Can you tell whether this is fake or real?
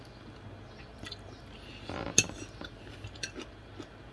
real